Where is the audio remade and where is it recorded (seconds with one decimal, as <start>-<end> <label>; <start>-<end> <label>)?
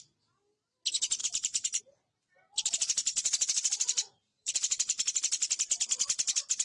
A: 0.0-1.2 recorded; 1.2-1.8 remade; 1.8-4.0 recorded; 4.0-4.5 remade; 4.5-6.6 recorded